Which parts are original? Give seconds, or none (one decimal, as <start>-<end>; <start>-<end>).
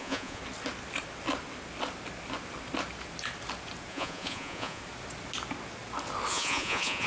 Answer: 0.4-3.9; 4.8-6.3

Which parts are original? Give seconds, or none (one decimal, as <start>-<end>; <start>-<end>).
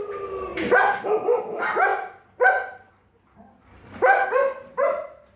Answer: 0.0-0.5; 1.4-5.4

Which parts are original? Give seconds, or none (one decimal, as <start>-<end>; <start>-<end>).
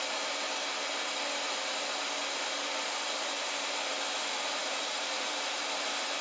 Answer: 0.0-4.6; 5.6-6.2